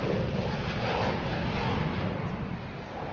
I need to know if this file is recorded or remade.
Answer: recorded